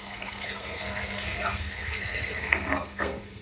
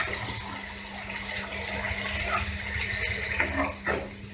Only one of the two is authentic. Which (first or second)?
second